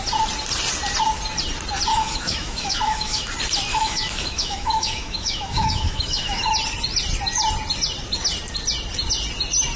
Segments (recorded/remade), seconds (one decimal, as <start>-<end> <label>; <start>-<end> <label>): 0.0-1.9 recorded; 1.9-3.3 remade; 3.3-3.7 recorded; 3.7-6.5 remade; 6.5-9.8 recorded